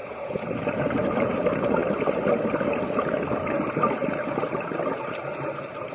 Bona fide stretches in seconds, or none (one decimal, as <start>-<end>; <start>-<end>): 0.0-5.9